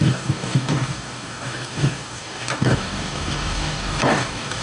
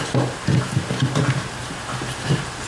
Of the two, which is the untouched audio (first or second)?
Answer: second